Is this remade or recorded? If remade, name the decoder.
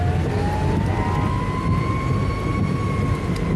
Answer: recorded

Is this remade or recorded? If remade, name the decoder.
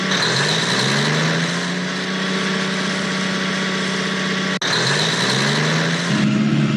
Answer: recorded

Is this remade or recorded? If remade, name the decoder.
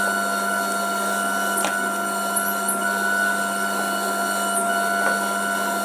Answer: recorded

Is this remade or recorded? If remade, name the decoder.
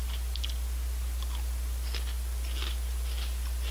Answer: recorded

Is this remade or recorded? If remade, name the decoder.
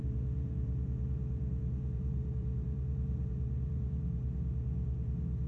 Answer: remade, vocoder, BigVGAN v2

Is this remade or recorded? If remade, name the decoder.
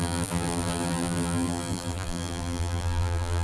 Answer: remade, vocoder, BigVGAN v2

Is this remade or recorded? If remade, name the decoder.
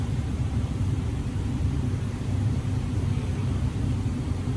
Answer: remade, vocoder, BigVGAN v2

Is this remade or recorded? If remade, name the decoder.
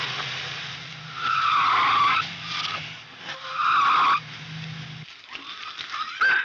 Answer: recorded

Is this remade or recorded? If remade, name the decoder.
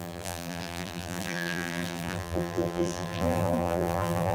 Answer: remade, vocoder, BigVGAN v2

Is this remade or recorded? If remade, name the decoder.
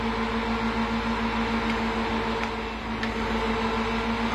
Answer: recorded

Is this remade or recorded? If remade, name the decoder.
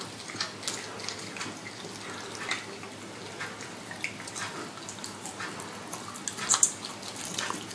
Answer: recorded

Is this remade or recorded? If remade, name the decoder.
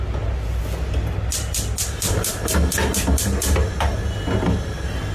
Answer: recorded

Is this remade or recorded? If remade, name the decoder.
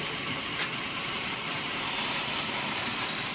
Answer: remade, vocoder, BigVGAN v2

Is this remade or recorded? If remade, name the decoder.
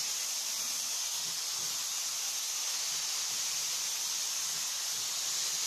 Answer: recorded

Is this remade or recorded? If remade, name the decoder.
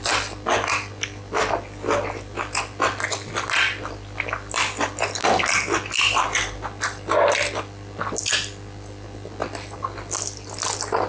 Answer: recorded